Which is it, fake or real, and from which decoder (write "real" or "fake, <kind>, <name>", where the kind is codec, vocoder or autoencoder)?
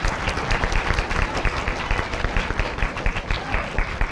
real